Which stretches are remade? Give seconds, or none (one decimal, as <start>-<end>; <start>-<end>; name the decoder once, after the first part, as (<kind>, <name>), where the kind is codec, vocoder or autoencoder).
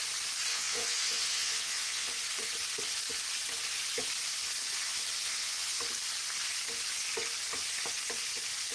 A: 0.5-2.1 (vocoder, WaveNeXt); 5.2-5.8